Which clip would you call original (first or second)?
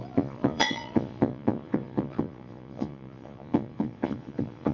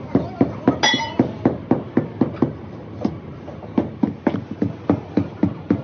second